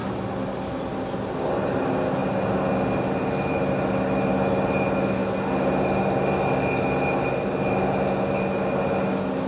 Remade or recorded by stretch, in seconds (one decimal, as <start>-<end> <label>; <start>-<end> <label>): 0.0-9.5 recorded